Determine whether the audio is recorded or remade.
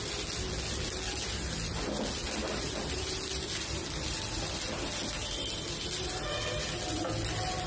recorded